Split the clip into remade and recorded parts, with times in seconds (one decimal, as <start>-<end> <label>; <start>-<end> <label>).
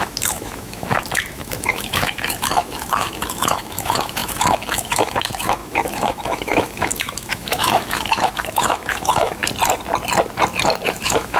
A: 0.0-9.4 remade; 9.4-10.9 recorded; 10.9-11.4 remade